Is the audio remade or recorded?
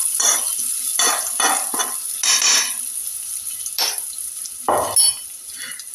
recorded